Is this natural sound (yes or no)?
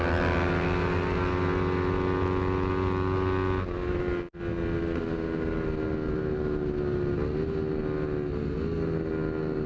yes